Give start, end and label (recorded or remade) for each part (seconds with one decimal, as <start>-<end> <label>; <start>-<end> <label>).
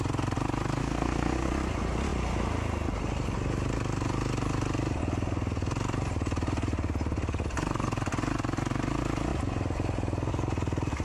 0.0-0.8 recorded; 0.8-1.5 remade; 1.5-11.0 recorded